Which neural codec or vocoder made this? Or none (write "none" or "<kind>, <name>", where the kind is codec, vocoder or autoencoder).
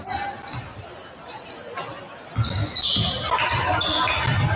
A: none